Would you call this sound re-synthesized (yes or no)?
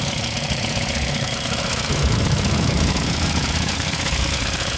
yes